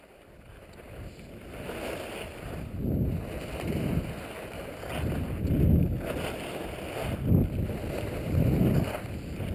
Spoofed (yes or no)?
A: no